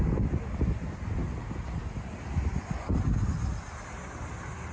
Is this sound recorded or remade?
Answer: recorded